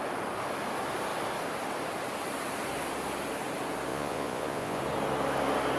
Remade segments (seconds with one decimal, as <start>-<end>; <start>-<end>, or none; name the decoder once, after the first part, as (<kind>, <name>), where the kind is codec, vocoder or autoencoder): 3.9-4.8 (vocoder, Vocos)